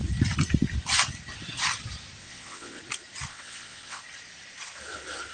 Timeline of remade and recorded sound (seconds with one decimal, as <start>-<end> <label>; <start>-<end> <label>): 0.0-2.2 recorded; 2.2-2.8 remade; 2.8-3.3 recorded; 3.3-4.0 remade; 4.0-5.3 recorded